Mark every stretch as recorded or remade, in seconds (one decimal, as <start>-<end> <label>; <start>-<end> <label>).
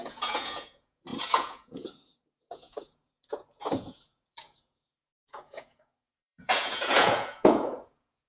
0.0-8.3 remade